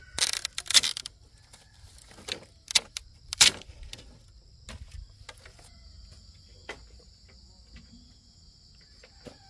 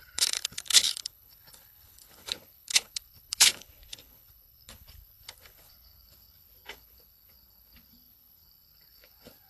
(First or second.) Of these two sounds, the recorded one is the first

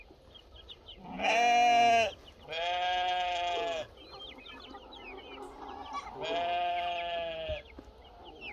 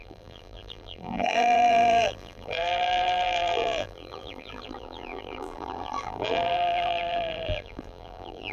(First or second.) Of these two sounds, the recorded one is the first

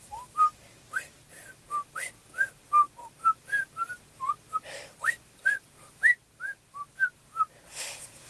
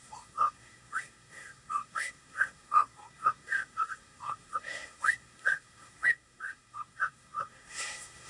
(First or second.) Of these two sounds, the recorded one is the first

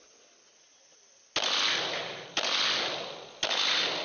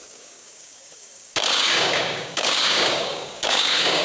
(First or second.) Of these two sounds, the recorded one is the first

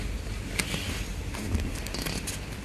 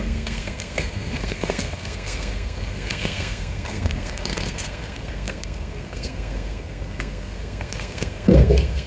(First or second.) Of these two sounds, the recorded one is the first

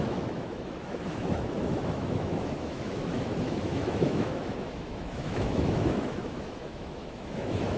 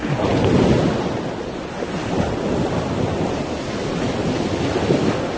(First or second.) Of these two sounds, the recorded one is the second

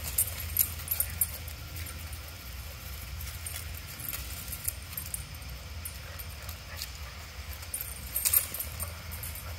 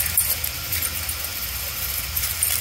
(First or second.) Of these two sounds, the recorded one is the first